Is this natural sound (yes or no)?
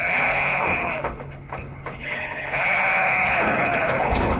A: no